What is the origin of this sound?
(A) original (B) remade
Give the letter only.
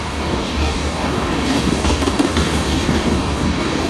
B